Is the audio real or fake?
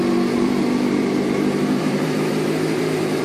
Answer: fake